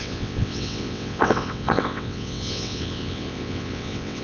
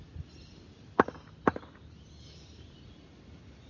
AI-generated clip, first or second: first